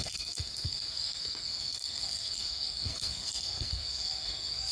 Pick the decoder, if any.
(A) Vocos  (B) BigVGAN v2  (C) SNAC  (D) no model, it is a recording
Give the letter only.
C